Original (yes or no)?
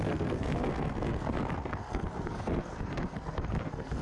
no